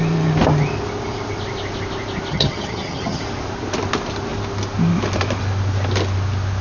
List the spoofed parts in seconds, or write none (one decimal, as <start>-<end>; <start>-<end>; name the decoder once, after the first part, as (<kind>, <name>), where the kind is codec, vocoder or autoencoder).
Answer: 2.3-3.2 (vocoder, HiFi-GAN)